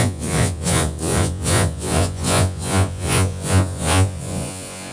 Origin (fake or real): fake